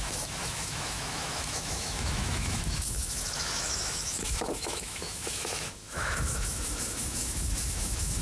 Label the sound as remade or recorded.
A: remade